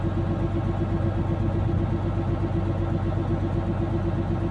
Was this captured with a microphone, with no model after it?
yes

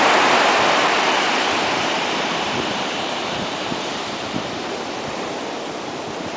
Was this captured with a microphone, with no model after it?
no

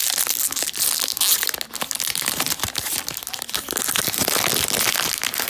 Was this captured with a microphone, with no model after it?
yes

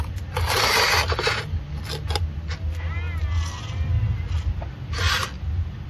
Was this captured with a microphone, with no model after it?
yes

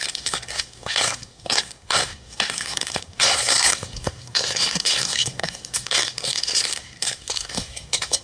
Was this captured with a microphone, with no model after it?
no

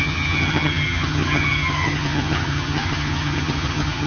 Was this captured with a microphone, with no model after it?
no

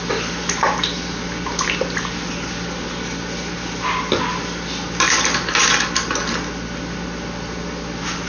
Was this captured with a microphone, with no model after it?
yes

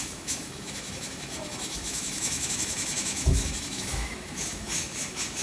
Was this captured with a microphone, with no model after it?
no